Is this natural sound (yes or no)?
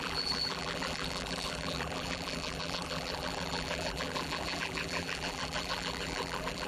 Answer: no